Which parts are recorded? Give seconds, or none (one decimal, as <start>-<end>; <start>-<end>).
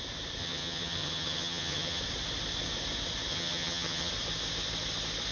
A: 0.0-0.4; 2.0-3.3; 4.1-5.3